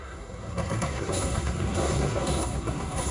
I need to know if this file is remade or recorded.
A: remade